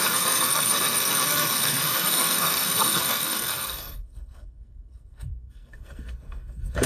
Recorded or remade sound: remade